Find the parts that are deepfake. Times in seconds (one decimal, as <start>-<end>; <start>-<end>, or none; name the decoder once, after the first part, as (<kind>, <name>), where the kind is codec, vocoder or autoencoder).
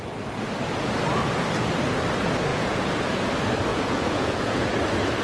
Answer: 2.5-3.3 (vocoder, Vocos); 3.7-4.7